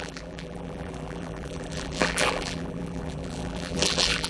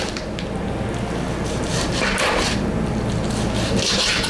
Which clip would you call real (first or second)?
second